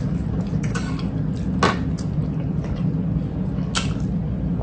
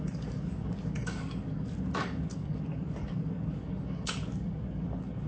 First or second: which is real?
first